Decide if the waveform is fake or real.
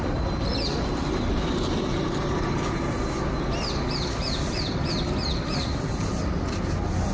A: real